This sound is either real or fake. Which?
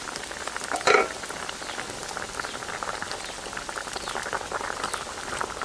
real